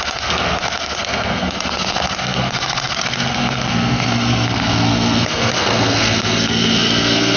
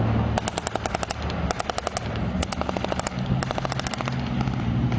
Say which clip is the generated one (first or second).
first